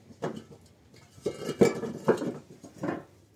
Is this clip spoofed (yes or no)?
no